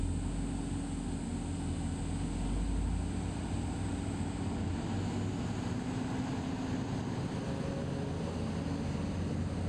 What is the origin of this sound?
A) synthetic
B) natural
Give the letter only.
B